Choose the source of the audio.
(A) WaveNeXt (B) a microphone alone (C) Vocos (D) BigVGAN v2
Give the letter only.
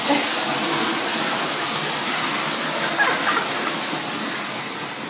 B